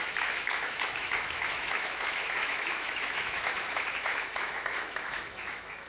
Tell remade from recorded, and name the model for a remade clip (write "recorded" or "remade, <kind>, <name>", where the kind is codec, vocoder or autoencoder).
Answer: remade, autoencoder, DAC-VAE